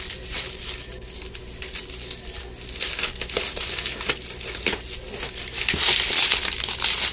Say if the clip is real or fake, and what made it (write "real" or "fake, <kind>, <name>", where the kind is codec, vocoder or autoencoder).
real